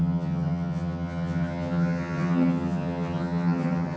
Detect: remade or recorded remade